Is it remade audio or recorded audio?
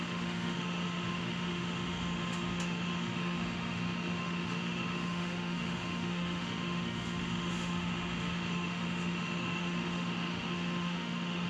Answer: remade